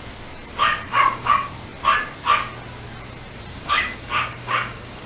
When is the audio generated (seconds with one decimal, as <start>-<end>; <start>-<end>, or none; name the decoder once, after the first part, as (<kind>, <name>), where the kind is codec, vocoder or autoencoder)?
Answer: 0.8-1.5 (codec, DAC); 3.5-5.1